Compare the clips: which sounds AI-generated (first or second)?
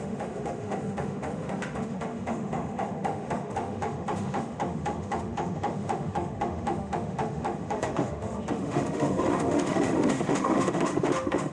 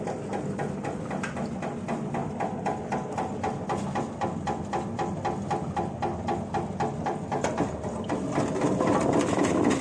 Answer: first